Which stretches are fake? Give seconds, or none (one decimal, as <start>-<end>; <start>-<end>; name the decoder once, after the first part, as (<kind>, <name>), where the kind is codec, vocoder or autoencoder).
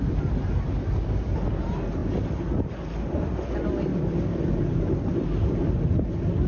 none